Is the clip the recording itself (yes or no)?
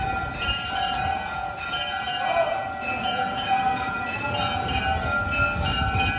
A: yes